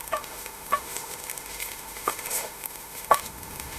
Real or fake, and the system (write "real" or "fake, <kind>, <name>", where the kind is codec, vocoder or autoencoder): fake, autoencoder, DAC-VAE